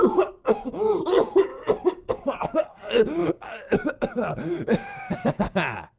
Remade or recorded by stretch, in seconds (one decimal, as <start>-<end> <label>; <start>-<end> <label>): 0.0-1.5 remade; 1.5-2.1 recorded; 2.1-6.0 remade